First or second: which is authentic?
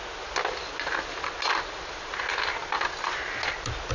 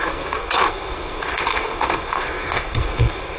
first